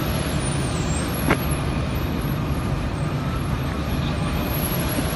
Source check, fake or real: real